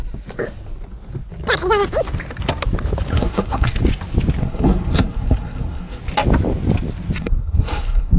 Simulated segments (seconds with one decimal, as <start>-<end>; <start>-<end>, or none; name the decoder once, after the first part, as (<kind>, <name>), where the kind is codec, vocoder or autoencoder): 3.1-3.7 (codec, SNAC); 4.4-6.0; 7.2-8.2